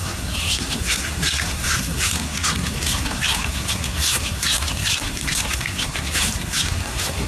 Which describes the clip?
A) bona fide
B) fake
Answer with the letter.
B